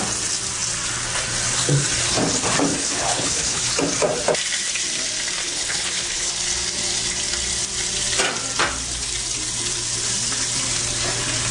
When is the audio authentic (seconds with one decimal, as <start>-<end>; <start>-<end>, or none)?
0.0-2.7; 3.7-5.4; 6.3-11.5